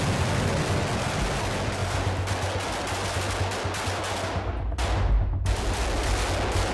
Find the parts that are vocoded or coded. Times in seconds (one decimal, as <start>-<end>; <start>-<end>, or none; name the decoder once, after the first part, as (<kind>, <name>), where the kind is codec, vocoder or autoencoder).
none